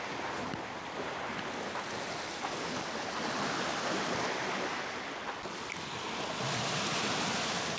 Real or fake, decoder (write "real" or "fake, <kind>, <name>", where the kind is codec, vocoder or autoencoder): real